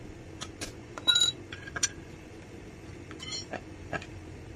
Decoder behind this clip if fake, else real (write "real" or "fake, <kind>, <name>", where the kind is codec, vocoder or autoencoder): fake, vocoder, Vocos